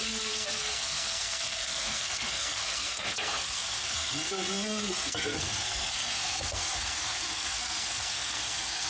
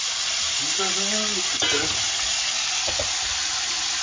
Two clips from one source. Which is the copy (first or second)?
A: first